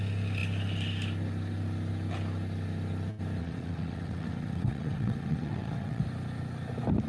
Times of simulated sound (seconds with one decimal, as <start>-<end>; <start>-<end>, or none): 3.4-6.0